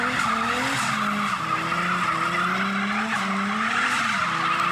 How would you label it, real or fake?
real